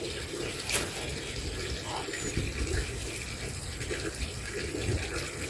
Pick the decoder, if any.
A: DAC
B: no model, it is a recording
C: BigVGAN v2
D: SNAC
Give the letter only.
B